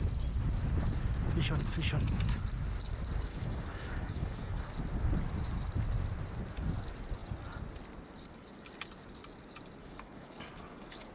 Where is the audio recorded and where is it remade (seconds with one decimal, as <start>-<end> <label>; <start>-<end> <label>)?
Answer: 0.0-3.3 recorded; 3.3-4.7 remade; 4.7-9.8 recorded; 9.8-11.1 remade